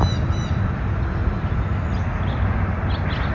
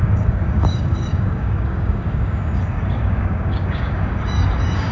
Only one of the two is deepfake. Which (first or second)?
second